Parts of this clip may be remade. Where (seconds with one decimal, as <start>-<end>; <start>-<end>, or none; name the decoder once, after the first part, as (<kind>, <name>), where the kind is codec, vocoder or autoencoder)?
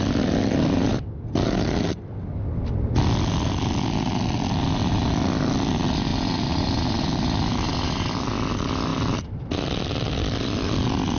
none